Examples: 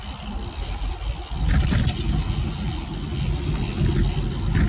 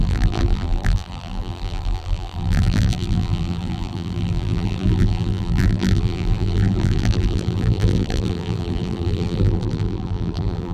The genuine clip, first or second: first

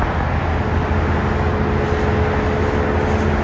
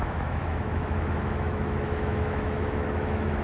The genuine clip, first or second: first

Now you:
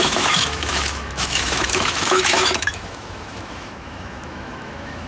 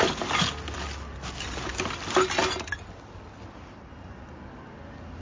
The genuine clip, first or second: second